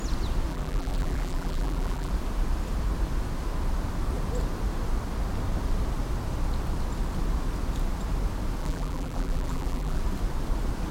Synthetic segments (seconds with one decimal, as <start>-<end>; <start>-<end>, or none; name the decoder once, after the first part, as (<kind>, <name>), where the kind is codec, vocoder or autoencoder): 0.5-2.1 (vocoder, BigVGAN v2); 8.6-10.0